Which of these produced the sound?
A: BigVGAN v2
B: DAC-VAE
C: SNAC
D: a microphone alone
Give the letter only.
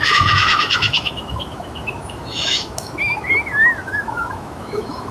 B